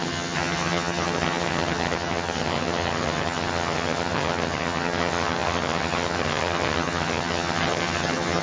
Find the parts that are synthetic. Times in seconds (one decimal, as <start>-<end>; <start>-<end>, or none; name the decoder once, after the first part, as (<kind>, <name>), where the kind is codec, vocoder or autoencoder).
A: 0.0-8.4 (vocoder, HiFi-GAN)